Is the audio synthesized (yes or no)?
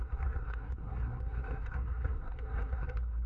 yes